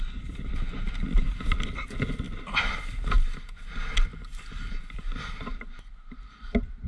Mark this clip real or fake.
real